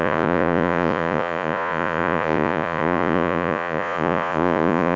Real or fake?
fake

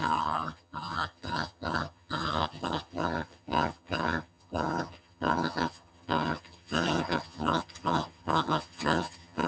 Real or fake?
fake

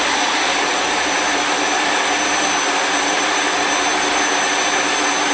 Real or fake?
real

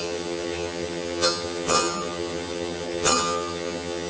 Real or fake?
fake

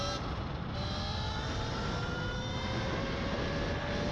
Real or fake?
real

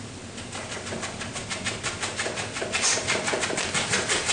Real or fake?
real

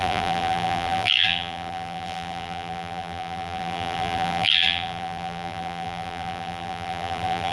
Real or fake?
fake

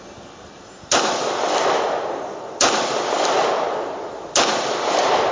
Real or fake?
real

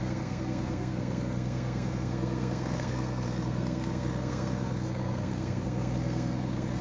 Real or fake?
fake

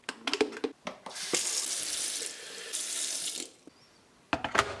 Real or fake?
real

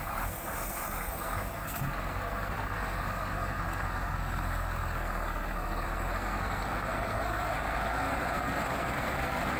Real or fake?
fake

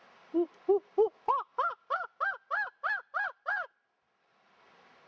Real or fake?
real